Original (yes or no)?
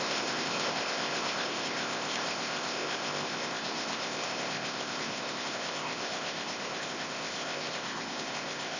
no